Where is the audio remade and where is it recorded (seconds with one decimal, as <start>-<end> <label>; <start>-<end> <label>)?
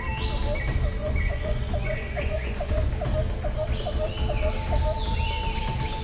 0.0-1.0 recorded; 1.0-2.9 remade; 2.9-6.0 recorded